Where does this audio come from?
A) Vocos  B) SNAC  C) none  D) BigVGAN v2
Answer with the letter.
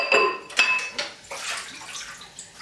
C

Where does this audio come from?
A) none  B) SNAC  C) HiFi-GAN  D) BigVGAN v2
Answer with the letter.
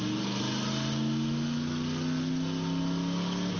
A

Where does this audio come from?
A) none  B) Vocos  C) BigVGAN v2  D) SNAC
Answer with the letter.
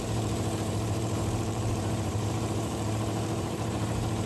C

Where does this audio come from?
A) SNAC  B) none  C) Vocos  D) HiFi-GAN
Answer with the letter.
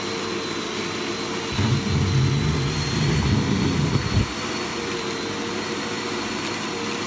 B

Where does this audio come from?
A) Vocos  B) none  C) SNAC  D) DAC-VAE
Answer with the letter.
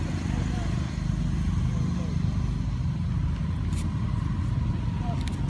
B